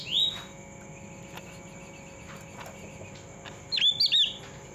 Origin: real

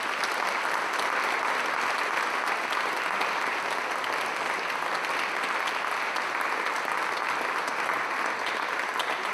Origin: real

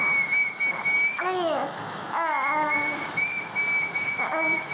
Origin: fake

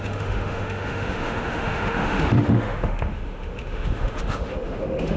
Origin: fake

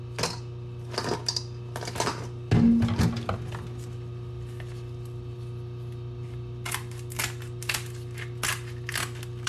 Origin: real